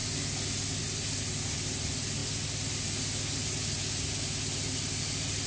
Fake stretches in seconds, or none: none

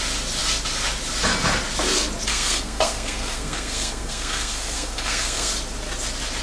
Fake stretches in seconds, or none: 2.3-5.5 (codec, SNAC)